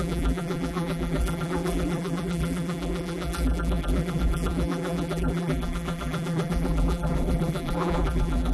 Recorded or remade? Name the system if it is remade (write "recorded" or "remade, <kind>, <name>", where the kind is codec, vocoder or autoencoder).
remade, vocoder, BigVGAN v2